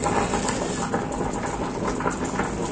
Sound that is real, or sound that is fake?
real